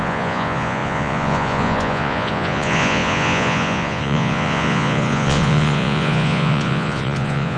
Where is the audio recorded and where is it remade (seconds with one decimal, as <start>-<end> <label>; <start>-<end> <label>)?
0.0-7.6 remade